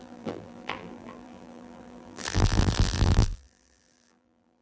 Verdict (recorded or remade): remade